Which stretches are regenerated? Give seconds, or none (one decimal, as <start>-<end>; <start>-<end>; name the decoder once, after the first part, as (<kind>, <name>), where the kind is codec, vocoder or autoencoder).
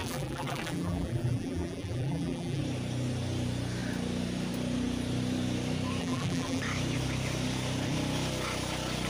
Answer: 0.0-2.6 (vocoder, BigVGAN v2); 6.0-6.6